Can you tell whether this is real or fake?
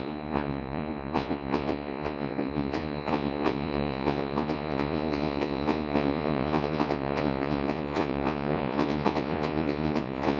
fake